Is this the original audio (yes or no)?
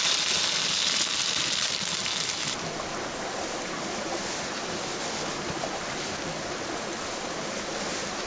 yes